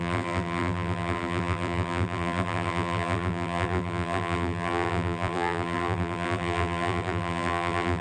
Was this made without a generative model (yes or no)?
no